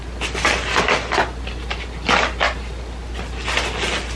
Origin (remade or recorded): recorded